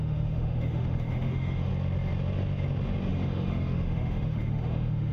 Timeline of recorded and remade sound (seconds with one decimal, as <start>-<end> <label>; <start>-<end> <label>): 0.0-1.7 remade; 1.7-3.1 recorded; 3.1-5.1 remade